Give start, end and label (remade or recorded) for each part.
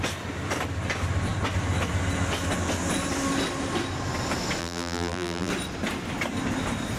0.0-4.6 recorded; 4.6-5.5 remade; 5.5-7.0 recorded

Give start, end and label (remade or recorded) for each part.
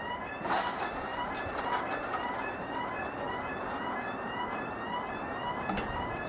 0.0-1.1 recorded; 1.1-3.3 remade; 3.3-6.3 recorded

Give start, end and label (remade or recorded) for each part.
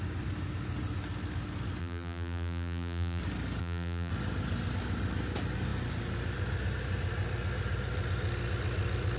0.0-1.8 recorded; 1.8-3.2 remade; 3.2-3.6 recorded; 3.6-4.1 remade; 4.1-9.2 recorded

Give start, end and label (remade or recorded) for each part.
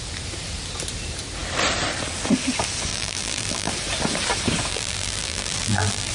0.0-2.9 recorded; 2.9-3.7 remade; 3.7-4.7 recorded; 4.7-6.1 remade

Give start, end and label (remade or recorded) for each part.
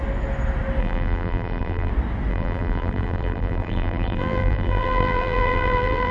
0.0-0.8 recorded; 0.8-1.9 remade; 1.9-2.3 recorded; 2.3-6.1 remade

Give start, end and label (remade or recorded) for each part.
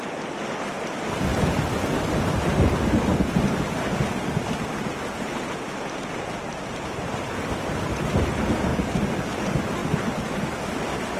0.0-1.3 recorded; 1.3-2.5 remade; 2.5-3.1 recorded; 3.1-7.9 remade; 7.9-9.8 recorded; 9.8-11.2 remade